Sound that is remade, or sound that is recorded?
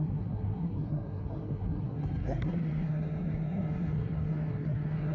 remade